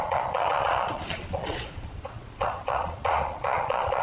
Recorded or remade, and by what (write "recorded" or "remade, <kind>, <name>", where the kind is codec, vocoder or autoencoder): remade, vocoder, Vocos